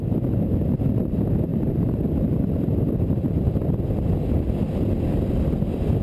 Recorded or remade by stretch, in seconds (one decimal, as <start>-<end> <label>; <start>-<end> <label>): 0.0-1.5 recorded; 1.5-4.8 remade; 4.8-6.0 recorded